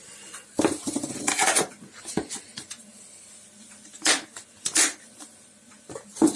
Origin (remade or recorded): remade